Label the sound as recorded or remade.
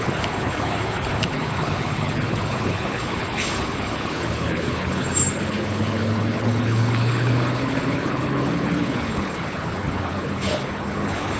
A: remade